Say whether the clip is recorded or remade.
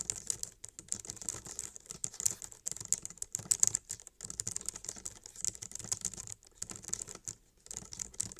recorded